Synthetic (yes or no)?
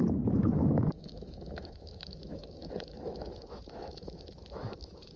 yes